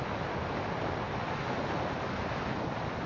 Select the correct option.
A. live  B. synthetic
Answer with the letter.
A